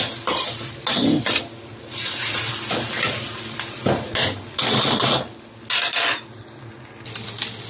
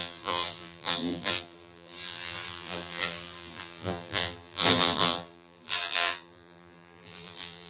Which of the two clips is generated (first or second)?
second